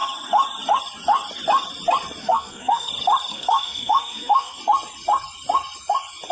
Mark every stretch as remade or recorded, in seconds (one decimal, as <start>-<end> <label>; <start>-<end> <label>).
0.0-2.2 recorded; 2.2-2.9 remade; 2.9-3.3 recorded; 3.3-4.6 remade; 4.6-6.3 recorded